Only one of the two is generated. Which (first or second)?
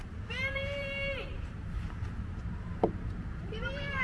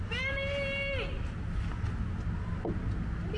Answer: first